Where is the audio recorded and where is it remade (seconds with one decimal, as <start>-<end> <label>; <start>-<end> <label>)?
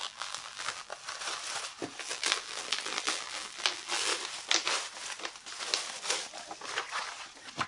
0.0-0.9 remade; 0.9-2.0 recorded; 2.0-4.1 remade; 4.1-7.7 recorded